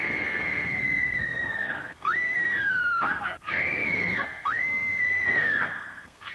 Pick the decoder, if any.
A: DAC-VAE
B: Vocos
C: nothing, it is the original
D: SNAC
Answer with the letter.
D